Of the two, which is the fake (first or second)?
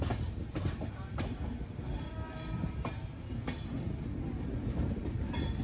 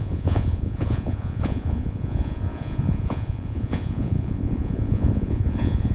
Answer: second